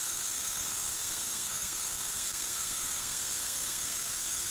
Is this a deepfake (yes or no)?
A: yes